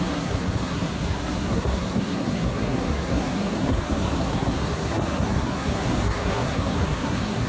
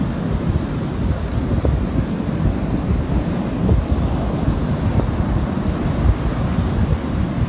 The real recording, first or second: second